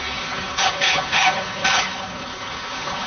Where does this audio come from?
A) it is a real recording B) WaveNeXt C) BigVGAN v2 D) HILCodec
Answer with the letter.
D